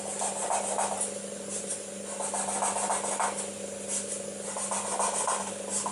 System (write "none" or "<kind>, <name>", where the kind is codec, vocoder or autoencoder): none